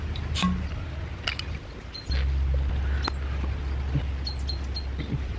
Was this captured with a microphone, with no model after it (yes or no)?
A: yes